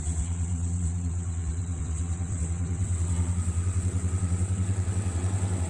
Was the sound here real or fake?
fake